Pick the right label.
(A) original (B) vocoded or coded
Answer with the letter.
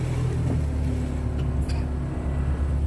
A